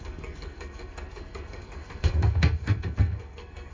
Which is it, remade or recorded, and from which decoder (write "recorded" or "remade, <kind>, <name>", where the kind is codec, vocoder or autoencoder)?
remade, codec, SNAC